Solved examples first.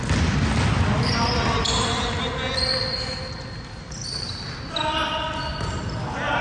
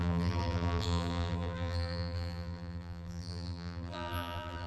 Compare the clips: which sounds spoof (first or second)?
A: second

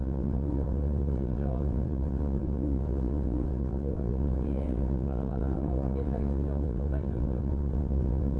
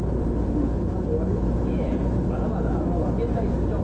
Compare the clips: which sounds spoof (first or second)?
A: first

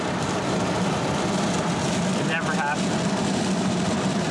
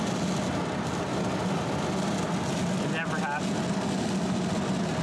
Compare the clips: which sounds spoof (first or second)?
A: first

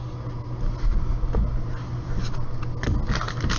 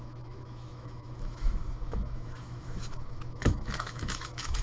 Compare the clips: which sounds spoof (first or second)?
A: second